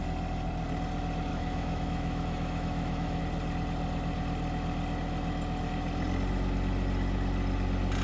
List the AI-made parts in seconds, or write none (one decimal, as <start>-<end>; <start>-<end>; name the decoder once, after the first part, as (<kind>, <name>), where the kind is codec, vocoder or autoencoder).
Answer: 1.3-3.2 (autoencoder, DAC-VAE)